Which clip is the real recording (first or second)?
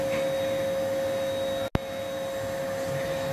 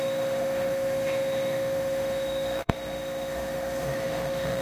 first